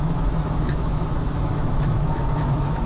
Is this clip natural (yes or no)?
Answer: no